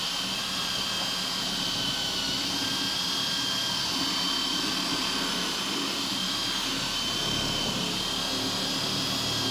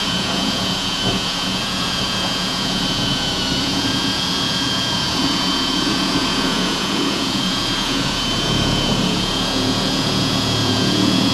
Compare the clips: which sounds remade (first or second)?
second